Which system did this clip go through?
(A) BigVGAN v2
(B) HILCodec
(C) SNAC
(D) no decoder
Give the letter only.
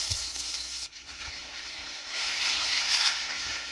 C